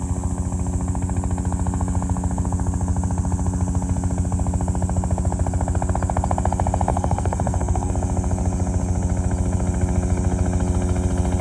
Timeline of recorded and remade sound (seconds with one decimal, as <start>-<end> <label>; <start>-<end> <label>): 0.0-6.9 recorded; 6.9-7.9 remade; 7.9-11.4 recorded

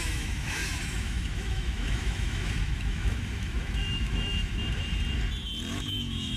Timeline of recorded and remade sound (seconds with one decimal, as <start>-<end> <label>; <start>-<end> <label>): 0.0-4.6 remade; 4.6-5.7 recorded; 5.7-6.4 remade

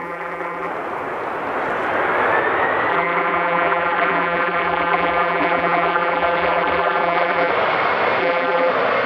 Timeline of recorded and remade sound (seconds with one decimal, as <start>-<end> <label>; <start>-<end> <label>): 0.0-0.7 remade; 0.7-2.9 recorded; 2.9-7.5 remade; 7.5-8.2 recorded; 8.2-8.7 remade; 8.7-9.1 recorded

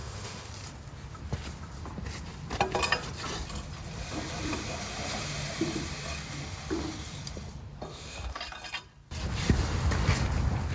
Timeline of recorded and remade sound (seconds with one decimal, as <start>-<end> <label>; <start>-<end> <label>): 0.0-0.5 remade; 0.5-7.9 recorded; 7.9-8.4 remade; 8.4-10.7 recorded

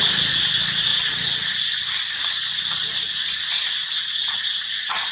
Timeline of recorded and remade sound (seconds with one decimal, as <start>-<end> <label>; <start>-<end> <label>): 0.0-5.1 recorded